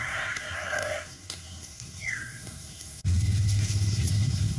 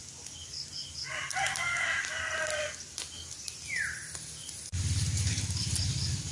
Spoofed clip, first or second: first